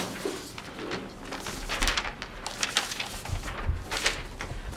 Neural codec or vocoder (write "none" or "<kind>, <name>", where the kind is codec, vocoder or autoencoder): none